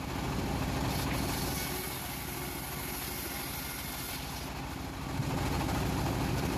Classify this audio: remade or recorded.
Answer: recorded